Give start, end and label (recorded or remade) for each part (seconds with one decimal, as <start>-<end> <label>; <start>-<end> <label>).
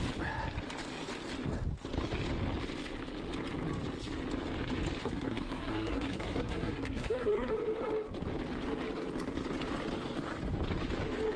0.0-5.0 recorded; 5.0-7.5 remade; 7.5-11.4 recorded